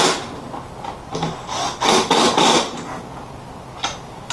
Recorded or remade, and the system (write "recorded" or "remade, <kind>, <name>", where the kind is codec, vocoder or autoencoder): recorded